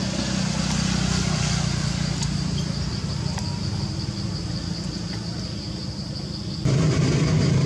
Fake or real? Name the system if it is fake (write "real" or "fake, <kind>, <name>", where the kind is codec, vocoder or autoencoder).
real